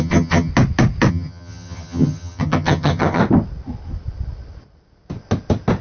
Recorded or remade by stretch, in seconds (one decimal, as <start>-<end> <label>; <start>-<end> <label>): 0.0-0.5 remade; 0.5-1.1 recorded; 1.1-3.2 remade; 3.2-5.8 recorded